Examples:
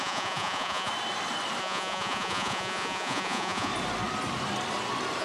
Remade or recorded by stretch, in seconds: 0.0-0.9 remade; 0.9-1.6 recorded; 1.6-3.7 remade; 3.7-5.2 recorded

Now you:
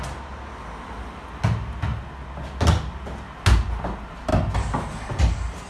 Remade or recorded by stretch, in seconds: 0.0-5.7 recorded